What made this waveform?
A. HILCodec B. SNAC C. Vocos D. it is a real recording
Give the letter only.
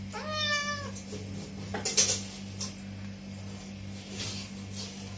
D